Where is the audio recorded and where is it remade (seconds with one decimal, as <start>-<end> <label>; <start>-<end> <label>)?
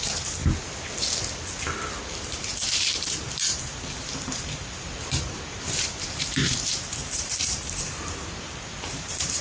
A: 0.0-0.4 remade; 0.4-2.0 recorded; 2.0-9.4 remade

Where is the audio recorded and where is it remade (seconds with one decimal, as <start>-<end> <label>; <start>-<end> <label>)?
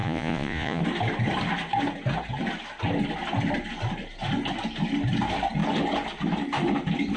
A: 0.0-0.8 remade; 0.8-7.2 recorded